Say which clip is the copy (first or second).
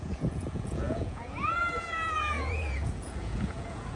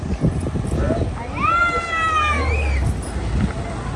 first